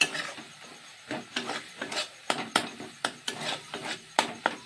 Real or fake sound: fake